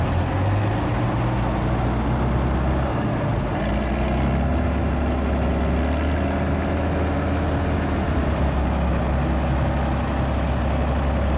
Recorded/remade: recorded